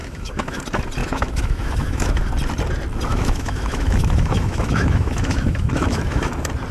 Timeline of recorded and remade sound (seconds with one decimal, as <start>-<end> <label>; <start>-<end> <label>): 0.0-0.6 remade; 0.6-1.0 recorded; 1.0-2.2 remade; 2.2-3.1 recorded; 3.1-6.3 remade; 6.3-6.7 recorded